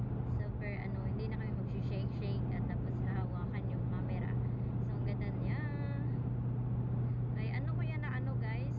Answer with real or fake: real